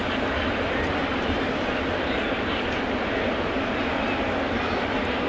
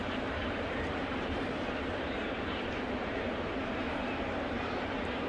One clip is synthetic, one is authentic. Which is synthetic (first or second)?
second